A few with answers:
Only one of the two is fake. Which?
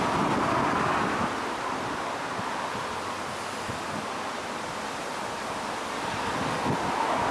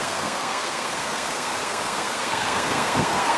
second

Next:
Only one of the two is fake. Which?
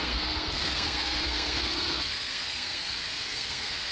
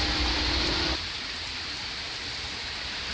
first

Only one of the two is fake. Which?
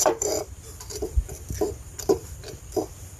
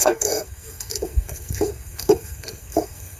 second